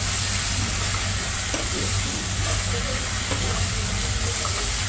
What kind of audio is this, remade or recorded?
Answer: recorded